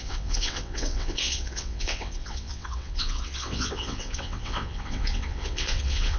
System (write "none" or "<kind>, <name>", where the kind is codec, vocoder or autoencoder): vocoder, WaveNeXt